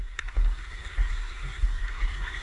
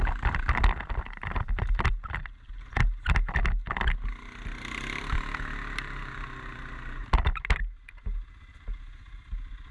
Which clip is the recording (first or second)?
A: second